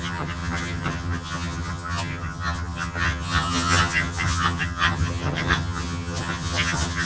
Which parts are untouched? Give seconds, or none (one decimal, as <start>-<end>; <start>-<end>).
none